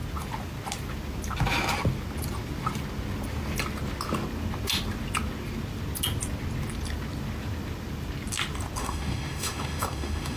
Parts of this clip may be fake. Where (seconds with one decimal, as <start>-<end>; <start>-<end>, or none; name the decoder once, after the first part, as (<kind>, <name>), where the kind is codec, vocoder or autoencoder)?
8.8-10.4 (autoencoder, DAC-VAE)